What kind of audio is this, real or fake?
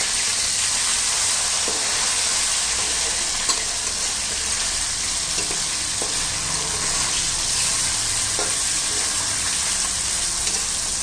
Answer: real